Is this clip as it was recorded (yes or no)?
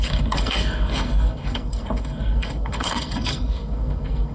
no